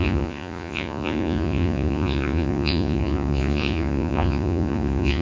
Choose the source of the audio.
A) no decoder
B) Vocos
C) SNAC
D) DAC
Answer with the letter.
B